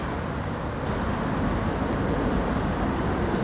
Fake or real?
real